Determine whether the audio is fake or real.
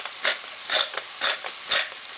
real